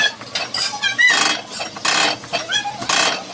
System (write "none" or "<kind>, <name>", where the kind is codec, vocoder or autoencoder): none